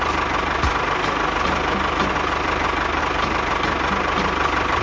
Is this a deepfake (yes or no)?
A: no